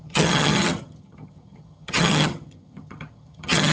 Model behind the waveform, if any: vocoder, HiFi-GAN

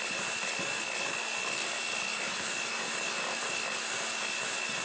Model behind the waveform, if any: none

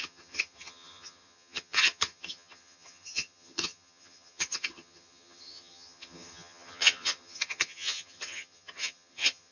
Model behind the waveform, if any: vocoder, HiFi-GAN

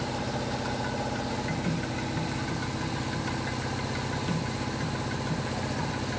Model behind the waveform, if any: none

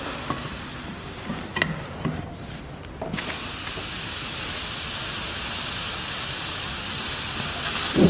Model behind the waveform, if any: none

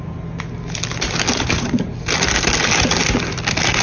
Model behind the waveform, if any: none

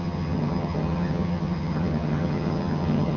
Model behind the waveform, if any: vocoder, HiFi-GAN